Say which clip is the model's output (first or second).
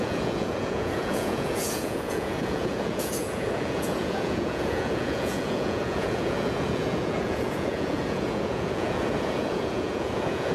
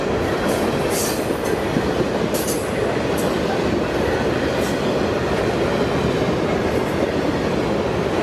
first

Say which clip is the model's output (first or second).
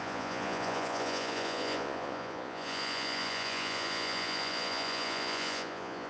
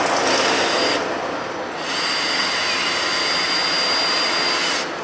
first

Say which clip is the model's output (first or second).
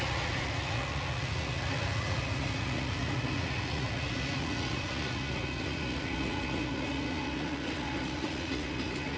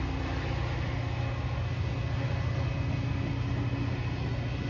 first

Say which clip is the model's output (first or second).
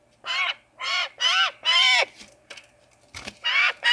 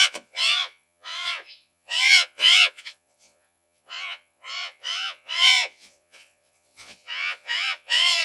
second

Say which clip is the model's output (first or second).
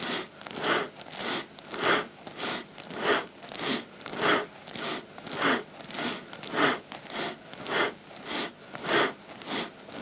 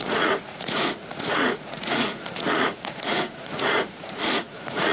second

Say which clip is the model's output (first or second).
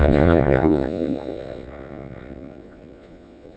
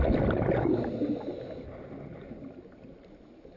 first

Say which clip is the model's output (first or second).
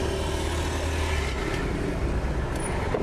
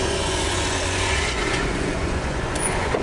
second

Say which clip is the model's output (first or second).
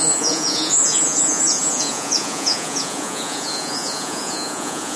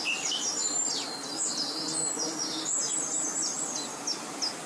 first